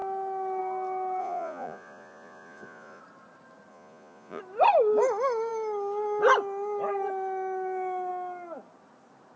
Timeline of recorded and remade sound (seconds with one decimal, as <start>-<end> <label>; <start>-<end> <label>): 0.0-1.2 recorded; 1.2-3.0 remade; 3.0-3.7 recorded; 3.7-4.4 remade; 4.4-9.4 recorded